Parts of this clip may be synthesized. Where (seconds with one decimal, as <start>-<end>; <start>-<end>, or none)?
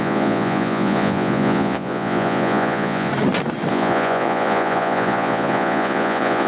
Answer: 0.0-3.1; 3.7-6.5